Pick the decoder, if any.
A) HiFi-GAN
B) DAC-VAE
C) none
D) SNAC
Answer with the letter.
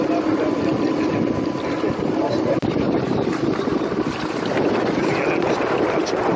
C